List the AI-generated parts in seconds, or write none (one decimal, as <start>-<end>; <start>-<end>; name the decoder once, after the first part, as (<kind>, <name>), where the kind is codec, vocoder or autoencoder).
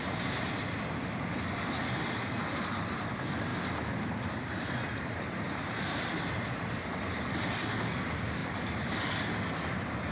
none